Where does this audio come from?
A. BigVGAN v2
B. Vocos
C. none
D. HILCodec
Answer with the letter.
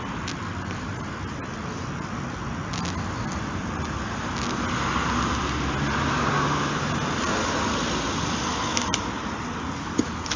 C